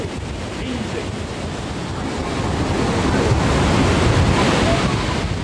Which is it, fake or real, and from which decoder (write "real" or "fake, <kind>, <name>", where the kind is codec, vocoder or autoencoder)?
real